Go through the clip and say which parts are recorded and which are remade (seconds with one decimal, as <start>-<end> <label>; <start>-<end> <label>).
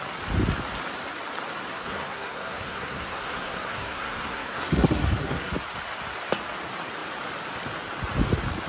0.0-1.7 recorded; 1.7-5.5 remade; 5.5-8.7 recorded